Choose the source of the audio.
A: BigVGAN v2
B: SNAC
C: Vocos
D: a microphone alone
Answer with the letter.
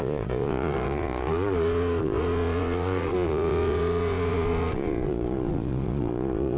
C